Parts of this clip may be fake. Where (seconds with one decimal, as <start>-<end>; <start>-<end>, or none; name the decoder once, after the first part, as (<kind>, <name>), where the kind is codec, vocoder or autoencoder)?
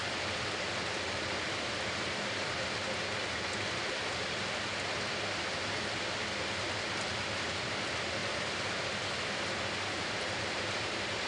none